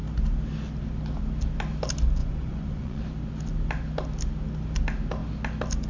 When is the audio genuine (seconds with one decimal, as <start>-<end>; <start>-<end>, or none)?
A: 0.0-2.2; 3.0-5.9

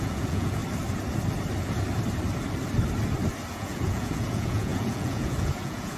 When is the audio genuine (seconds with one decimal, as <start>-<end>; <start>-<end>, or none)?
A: 0.6-3.5

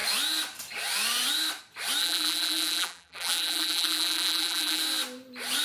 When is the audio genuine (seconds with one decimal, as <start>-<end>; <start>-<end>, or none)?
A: 0.0-2.0; 4.8-5.6

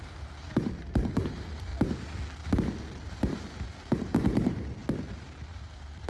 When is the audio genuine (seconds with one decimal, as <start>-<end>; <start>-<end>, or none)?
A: 1.7-3.0; 4.8-5.5

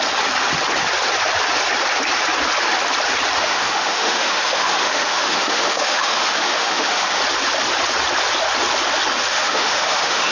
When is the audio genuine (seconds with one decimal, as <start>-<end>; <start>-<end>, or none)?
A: 0.0-3.4; 7.2-9.3

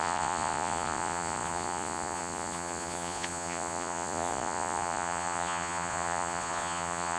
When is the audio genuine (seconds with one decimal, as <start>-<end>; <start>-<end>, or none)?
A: none